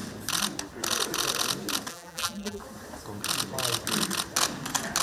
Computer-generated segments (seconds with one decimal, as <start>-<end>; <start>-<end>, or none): 1.9-2.6